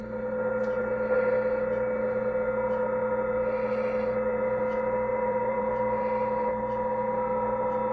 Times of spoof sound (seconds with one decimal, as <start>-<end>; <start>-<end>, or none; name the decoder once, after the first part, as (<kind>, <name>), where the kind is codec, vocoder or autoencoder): 5.1-6.0 (vocoder, BigVGAN v2)